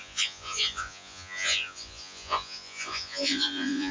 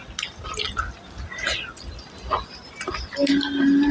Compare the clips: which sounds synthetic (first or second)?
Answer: first